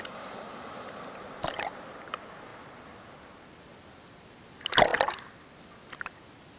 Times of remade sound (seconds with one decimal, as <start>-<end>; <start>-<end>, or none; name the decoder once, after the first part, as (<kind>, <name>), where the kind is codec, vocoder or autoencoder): none